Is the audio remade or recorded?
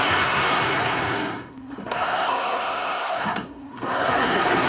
remade